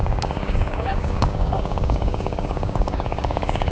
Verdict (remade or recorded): remade